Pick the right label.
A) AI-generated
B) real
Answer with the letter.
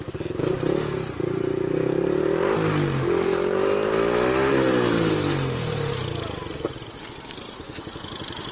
B